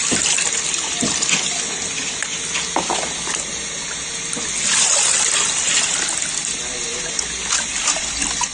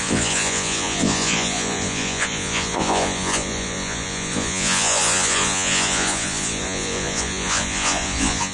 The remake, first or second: second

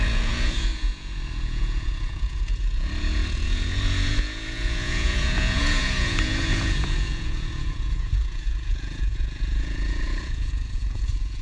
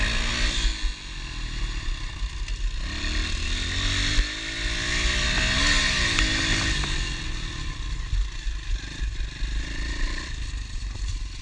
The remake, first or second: first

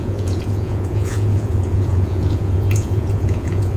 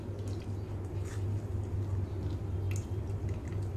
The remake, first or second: first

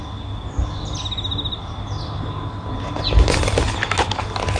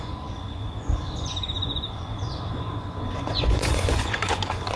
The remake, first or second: second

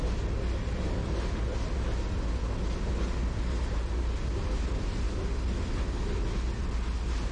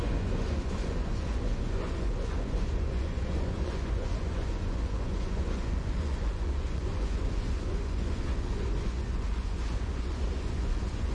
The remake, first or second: second